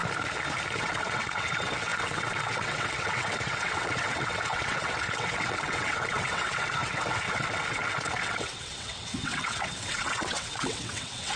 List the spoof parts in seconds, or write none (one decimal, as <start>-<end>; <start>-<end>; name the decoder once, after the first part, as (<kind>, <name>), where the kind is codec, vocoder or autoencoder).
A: 0.8-11.4 (vocoder, WaveNeXt)